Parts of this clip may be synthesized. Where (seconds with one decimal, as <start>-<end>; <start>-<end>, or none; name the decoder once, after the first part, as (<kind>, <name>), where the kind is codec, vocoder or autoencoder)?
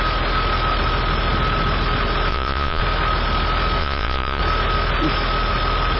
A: 2.3-2.8 (vocoder, Vocos); 3.8-4.4